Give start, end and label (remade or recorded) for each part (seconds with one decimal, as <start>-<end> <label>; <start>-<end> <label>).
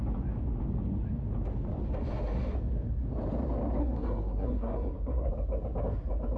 0.0-3.8 recorded; 3.8-5.3 remade; 5.3-6.4 recorded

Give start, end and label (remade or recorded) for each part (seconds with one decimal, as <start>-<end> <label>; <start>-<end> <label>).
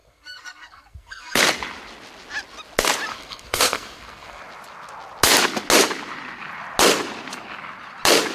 0.0-1.4 remade; 1.4-3.1 recorded; 3.1-4.4 remade; 4.4-8.3 recorded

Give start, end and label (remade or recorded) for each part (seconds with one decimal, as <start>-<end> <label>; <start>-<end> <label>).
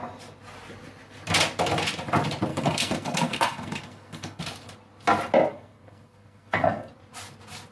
0.0-2.5 recorded; 2.5-4.4 remade; 4.4-5.5 recorded; 5.5-6.9 remade; 6.9-7.7 recorded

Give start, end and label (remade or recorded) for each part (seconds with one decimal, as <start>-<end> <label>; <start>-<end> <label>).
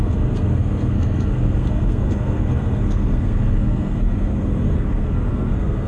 0.0-5.9 remade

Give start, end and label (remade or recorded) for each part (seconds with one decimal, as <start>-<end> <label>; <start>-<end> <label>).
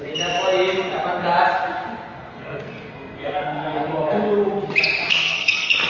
0.0-2.3 recorded; 2.3-3.8 remade; 3.8-5.1 recorded; 5.1-5.9 remade